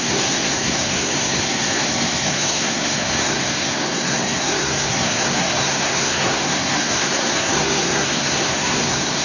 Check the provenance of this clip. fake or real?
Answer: fake